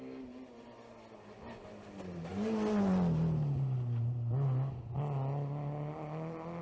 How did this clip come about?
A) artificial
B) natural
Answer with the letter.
B